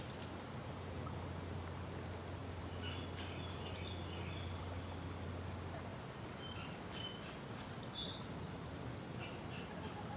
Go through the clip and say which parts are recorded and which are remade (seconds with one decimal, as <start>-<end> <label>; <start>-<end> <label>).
0.0-10.2 recorded